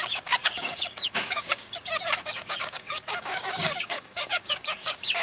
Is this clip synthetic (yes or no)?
yes